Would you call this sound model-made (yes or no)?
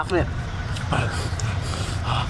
yes